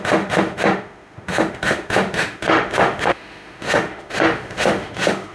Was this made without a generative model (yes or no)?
no